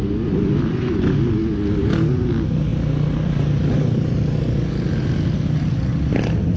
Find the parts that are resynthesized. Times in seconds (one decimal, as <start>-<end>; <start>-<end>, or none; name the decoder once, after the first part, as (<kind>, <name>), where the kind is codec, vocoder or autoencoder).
none